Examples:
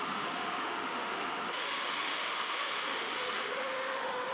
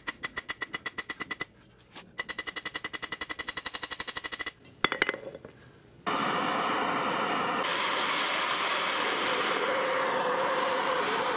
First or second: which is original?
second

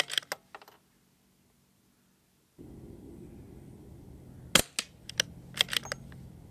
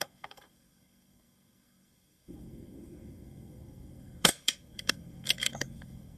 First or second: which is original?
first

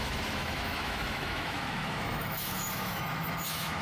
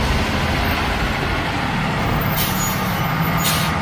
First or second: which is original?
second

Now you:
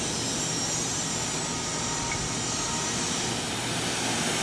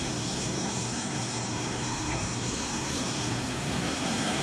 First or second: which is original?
first